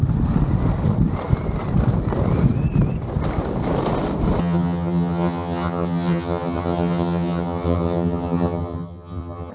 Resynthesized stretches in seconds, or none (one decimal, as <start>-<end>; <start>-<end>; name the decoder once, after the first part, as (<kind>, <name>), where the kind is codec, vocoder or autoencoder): 4.4-9.5 (vocoder, HiFi-GAN)